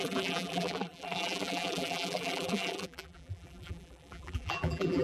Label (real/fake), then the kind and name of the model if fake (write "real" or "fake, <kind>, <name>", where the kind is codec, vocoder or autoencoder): fake, vocoder, BigVGAN v2